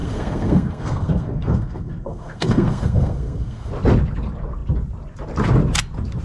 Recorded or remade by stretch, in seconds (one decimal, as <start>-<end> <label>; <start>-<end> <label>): 0.0-3.7 remade; 3.7-6.2 recorded